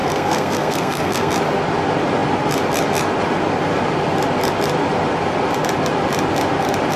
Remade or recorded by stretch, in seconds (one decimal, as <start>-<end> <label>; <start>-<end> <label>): 0.0-1.3 remade; 1.3-7.0 recorded

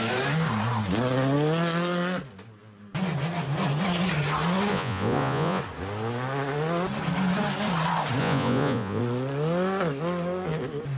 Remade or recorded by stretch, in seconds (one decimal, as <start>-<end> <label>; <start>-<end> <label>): 0.0-4.7 recorded; 4.7-5.6 remade; 5.6-8.2 recorded; 8.2-9.0 remade; 9.0-11.0 recorded

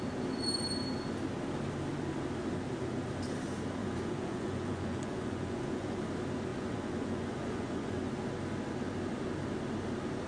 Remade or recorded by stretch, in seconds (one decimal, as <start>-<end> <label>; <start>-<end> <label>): 0.0-3.8 recorded; 3.8-6.0 remade; 6.0-6.5 recorded; 6.5-8.1 remade; 8.1-10.3 recorded

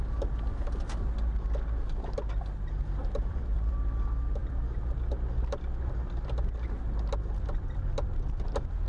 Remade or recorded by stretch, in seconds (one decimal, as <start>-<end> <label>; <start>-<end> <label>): 0.0-3.0 recorded; 3.0-3.7 remade; 3.7-4.4 recorded; 4.4-4.9 remade; 4.9-8.9 recorded

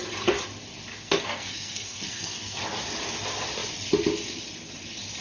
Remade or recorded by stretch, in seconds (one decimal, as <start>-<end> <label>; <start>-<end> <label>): 0.0-0.9 recorded; 0.9-2.6 remade; 2.6-5.2 recorded